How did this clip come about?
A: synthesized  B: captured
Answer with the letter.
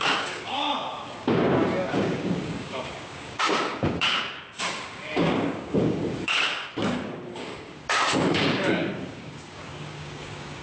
A